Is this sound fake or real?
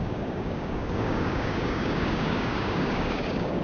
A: fake